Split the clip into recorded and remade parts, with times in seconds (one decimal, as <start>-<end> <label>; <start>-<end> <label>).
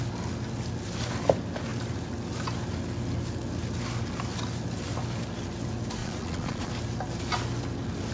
0.0-6.0 recorded; 6.0-6.7 remade; 6.7-8.1 recorded